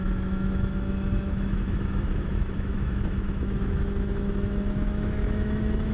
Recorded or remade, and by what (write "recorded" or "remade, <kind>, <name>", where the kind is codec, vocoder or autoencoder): remade, autoencoder, DAC-VAE